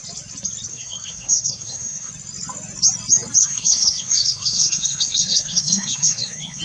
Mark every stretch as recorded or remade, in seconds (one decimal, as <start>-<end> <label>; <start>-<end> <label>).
0.0-0.7 recorded; 0.7-2.1 remade; 2.1-3.4 recorded; 3.4-6.6 remade